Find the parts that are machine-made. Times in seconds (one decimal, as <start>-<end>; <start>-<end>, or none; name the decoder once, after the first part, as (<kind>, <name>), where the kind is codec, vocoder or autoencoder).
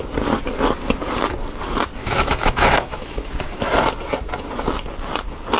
2.0-3.6 (autoencoder, DAC-VAE)